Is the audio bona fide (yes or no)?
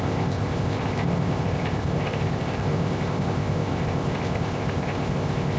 no